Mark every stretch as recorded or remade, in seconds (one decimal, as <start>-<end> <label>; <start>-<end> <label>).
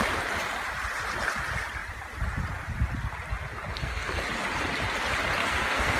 0.0-3.7 recorded; 3.7-4.2 remade; 4.2-5.4 recorded; 5.4-6.0 remade